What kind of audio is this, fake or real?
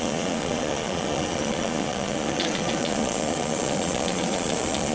fake